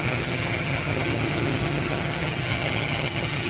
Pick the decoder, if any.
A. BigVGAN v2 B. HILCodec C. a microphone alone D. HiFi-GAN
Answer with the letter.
D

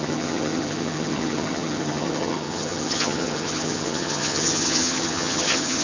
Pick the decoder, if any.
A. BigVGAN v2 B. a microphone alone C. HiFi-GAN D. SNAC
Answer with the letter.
C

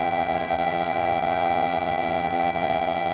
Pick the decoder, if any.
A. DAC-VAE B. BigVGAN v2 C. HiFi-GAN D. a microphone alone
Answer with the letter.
C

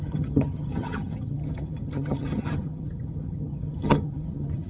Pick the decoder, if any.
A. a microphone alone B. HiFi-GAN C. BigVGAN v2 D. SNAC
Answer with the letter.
B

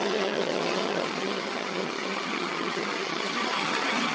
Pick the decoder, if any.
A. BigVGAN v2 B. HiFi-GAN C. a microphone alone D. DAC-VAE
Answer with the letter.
B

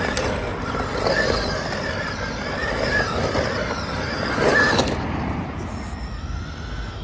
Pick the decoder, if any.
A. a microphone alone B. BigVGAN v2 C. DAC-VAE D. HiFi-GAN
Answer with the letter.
A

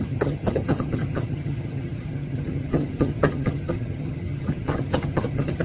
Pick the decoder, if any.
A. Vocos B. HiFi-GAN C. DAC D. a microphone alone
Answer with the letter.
B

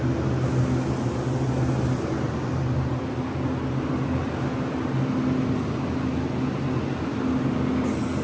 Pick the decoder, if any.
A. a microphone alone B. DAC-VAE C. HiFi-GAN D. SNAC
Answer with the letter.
A